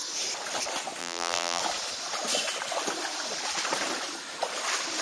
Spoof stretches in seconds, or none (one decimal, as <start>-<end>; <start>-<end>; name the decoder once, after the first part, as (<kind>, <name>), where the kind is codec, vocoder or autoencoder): 1.0-1.6 (vocoder, BigVGAN v2)